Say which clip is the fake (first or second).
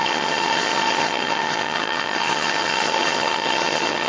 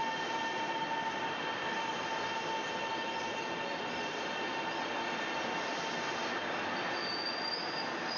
first